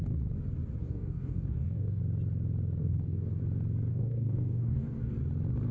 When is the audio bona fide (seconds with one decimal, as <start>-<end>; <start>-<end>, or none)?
0.0-0.8; 2.0-2.8; 3.4-3.9; 5.1-5.7